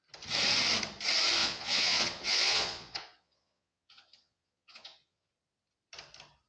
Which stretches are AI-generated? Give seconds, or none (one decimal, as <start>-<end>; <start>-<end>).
1.4-5.3